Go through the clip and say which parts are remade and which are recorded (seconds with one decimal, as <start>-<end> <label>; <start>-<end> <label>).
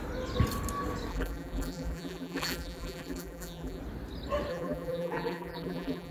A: 0.0-1.1 recorded; 1.1-3.8 remade; 3.8-4.5 recorded; 4.5-6.1 remade